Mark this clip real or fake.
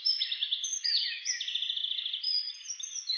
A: real